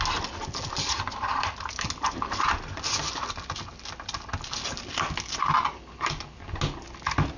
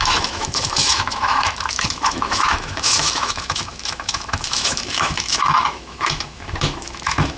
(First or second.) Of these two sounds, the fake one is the second